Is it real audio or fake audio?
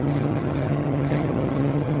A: fake